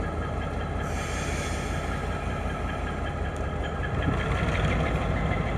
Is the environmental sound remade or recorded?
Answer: recorded